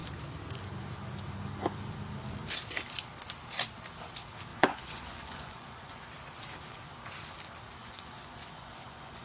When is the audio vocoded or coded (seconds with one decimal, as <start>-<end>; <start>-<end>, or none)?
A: 4.5-6.0; 7.8-9.2